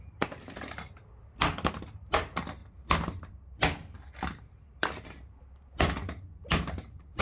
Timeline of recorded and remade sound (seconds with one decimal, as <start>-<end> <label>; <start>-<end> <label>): 0.0-7.2 recorded